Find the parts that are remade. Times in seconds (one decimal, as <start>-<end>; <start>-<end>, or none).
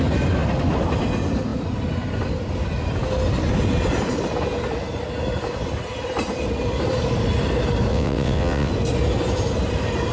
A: 7.9-8.7